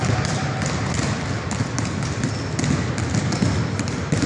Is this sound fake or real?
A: real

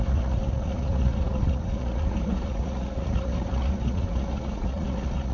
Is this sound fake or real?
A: fake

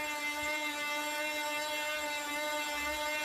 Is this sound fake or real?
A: real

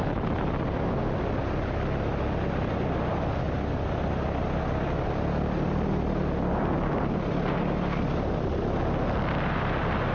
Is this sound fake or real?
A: real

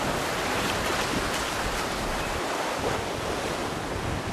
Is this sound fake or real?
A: real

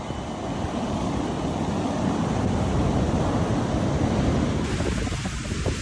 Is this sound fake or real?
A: real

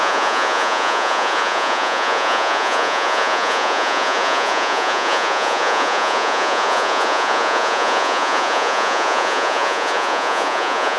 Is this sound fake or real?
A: fake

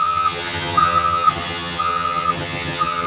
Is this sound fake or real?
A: fake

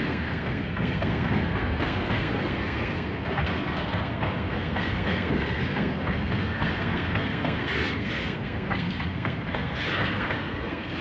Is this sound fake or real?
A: fake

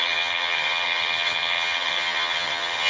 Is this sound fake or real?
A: fake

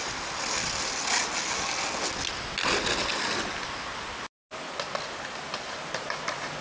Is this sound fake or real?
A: real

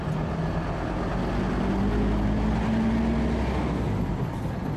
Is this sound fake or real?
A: real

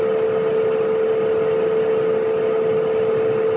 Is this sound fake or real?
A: real